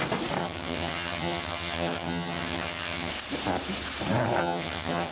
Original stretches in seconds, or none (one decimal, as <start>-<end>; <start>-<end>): 0.0-0.4; 3.1-4.4